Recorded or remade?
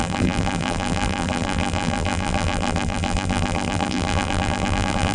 remade